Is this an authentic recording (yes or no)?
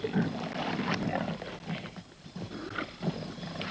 yes